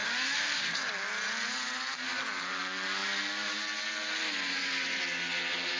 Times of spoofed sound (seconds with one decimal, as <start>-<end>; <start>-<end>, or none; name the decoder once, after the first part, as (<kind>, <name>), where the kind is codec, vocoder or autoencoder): none